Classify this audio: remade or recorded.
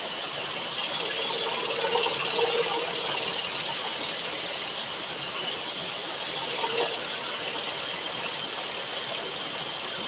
recorded